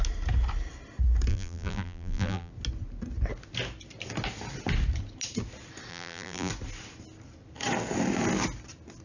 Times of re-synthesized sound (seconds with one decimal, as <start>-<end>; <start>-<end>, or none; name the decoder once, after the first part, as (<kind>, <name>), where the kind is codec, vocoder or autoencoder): 1.3-2.5 (vocoder, BigVGAN v2); 5.9-6.5